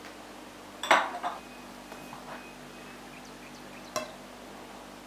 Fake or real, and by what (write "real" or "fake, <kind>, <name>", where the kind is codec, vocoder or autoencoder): real